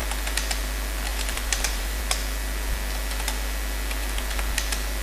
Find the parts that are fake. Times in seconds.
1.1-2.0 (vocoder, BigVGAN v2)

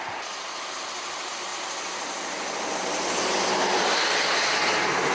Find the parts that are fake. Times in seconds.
none

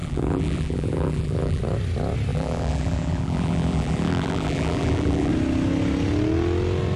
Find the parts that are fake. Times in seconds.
0.0-1.6 (vocoder, BigVGAN v2); 2.3-5.3

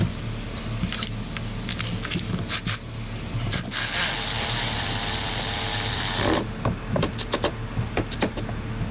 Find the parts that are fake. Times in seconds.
1.7-2.3 (codec, DAC)

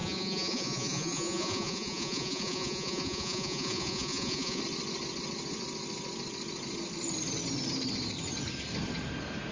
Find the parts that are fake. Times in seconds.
0.0-4.6 (vocoder, Vocos)

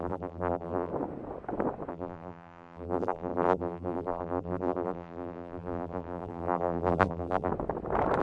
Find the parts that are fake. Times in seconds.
0.0-0.9 (vocoder, BigVGAN v2); 1.9-7.5

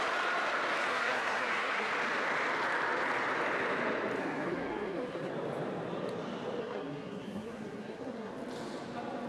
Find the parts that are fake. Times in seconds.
0.9-1.9 (codec, SNAC); 4.2-5.3; 6.6-8.3